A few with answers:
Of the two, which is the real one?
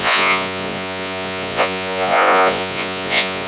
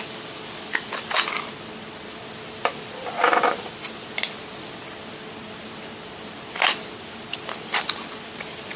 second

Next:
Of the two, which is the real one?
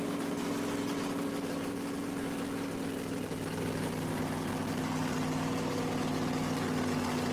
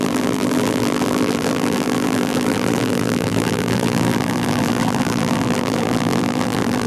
first